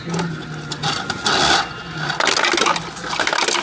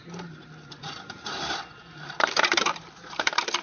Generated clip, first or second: second